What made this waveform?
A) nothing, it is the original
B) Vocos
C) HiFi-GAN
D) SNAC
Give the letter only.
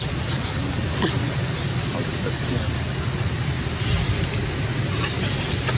A